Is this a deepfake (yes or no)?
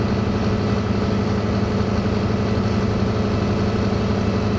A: no